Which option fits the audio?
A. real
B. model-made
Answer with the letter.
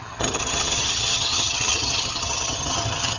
B